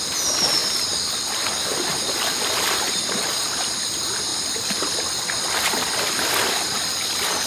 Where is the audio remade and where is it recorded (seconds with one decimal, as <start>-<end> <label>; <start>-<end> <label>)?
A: 0.0-0.6 recorded; 0.6-1.1 remade; 1.1-1.7 recorded; 1.7-2.8 remade; 2.8-4.3 recorded; 4.3-5.1 remade; 5.1-7.5 recorded